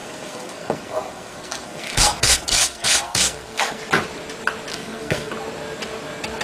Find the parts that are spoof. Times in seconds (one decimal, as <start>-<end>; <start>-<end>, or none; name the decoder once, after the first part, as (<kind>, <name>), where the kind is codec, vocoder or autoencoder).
0.0-3.8 (codec, SNAC); 4.7-5.3